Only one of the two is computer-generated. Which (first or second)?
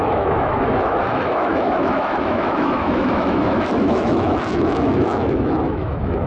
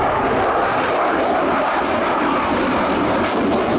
first